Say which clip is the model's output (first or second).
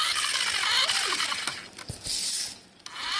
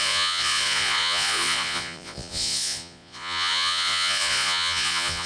second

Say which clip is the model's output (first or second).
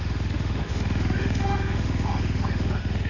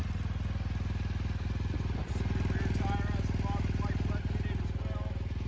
first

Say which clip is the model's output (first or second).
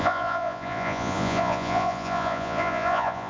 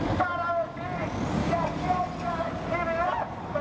first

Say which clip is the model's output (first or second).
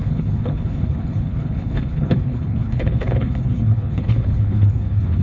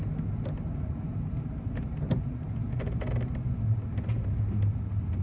first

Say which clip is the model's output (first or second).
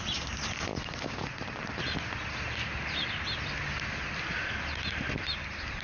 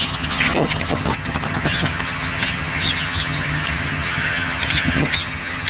second